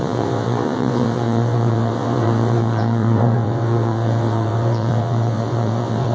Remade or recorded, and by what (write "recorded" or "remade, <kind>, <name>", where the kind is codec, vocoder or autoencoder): remade, vocoder, WaveNeXt